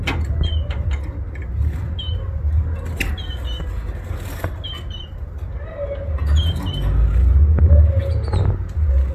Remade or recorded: recorded